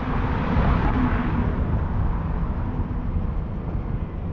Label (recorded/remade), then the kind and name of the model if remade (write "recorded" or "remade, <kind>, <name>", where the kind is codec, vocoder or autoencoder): recorded